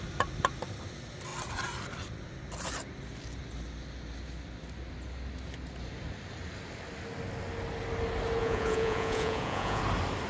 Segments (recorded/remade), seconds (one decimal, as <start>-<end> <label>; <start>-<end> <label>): 0.0-8.4 recorded; 8.4-9.8 remade; 9.8-10.3 recorded